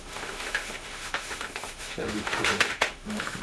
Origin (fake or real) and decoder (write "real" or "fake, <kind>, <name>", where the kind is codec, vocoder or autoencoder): fake, autoencoder, DAC-VAE